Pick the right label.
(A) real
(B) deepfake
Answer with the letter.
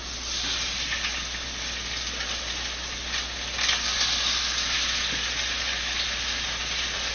A